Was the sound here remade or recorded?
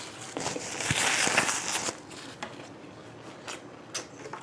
recorded